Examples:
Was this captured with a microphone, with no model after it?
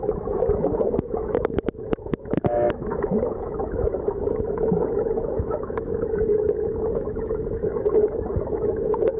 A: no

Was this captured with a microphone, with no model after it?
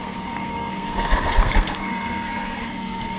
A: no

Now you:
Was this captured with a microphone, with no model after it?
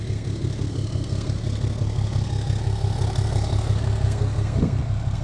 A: no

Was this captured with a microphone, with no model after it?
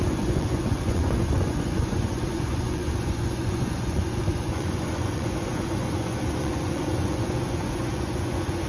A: no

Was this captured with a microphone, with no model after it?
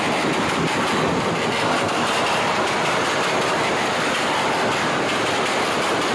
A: yes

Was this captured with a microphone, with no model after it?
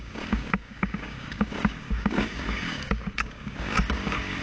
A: no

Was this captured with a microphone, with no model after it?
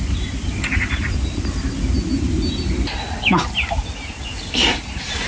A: yes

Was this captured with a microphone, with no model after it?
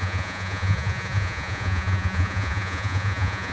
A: no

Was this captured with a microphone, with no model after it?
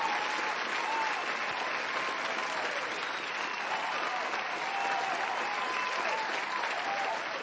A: yes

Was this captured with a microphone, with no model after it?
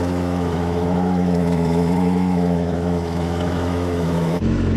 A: no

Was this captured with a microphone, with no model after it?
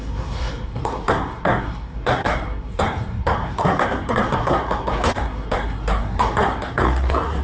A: no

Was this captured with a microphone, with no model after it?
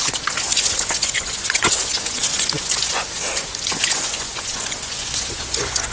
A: no